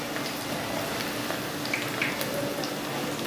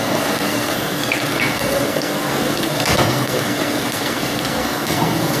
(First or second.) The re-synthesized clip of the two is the second